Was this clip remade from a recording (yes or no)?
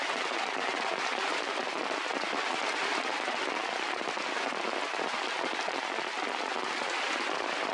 no